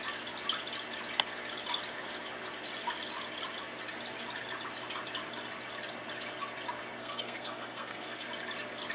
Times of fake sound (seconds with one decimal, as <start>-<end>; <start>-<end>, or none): 7.0-8.3